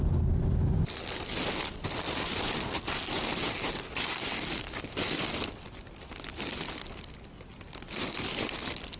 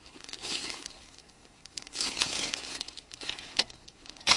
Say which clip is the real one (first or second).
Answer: first